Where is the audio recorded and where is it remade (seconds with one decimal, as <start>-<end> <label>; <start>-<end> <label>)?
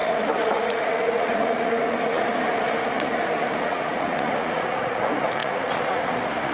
0.0-6.5 remade